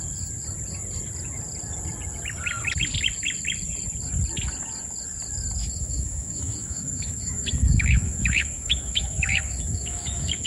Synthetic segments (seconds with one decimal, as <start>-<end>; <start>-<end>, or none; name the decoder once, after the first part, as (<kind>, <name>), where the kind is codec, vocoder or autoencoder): 5.6-10.5 (autoencoder, DAC-VAE)